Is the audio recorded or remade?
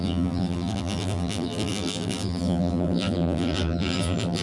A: remade